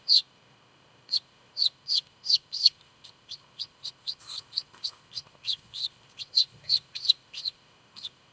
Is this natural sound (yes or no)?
no